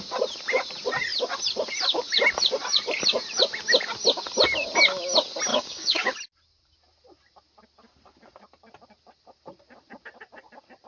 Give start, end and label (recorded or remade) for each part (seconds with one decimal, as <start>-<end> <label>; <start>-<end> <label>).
0.0-5.5 recorded; 5.5-6.1 remade; 6.1-10.9 recorded